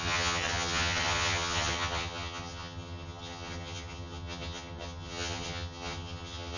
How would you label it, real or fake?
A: fake